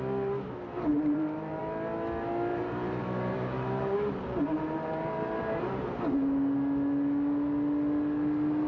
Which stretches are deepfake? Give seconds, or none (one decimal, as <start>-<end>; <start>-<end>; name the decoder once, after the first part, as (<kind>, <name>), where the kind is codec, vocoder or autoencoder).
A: 0.9-1.6 (vocoder, BigVGAN v2); 2.5-5.9

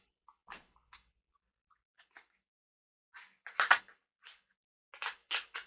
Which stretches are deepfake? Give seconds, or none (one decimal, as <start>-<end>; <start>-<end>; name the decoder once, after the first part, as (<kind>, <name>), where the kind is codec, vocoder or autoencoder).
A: none

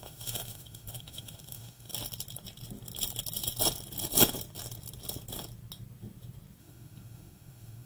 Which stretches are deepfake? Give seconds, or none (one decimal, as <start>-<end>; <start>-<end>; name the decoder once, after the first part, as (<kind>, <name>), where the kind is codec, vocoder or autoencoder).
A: 0.0-1.9 (autoencoder, DAC-VAE); 6.6-7.9

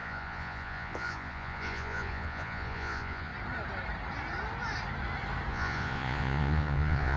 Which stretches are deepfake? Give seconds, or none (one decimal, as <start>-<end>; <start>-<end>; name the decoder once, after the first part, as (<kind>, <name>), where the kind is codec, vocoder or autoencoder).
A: 0.0-3.3 (vocoder, Vocos); 5.5-7.2

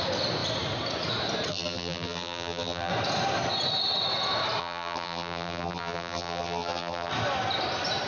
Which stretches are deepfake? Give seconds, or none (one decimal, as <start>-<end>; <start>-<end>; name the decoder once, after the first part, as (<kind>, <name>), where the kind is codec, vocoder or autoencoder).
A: 1.5-2.9 (vocoder, BigVGAN v2); 4.6-7.1

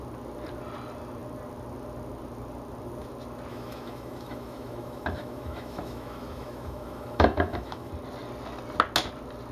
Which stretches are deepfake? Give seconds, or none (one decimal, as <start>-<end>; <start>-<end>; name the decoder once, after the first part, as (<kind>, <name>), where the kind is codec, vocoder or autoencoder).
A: 3.5-7.9 (autoencoder, DAC-VAE)